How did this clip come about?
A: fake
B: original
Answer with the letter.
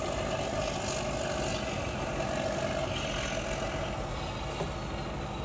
B